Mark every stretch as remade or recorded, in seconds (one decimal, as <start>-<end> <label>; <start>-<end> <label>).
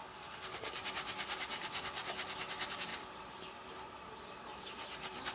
0.0-0.8 remade; 0.8-5.3 recorded